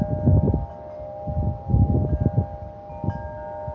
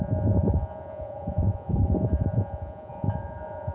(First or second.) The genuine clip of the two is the first